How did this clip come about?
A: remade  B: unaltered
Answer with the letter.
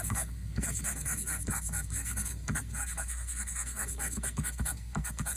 A